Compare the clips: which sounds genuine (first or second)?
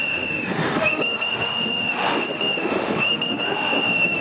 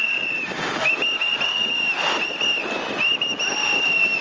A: second